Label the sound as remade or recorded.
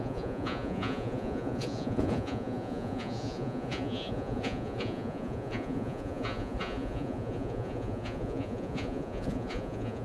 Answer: remade